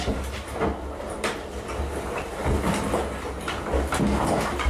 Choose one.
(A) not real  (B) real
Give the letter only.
B